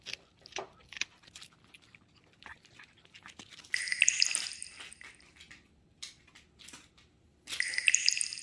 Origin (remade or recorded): recorded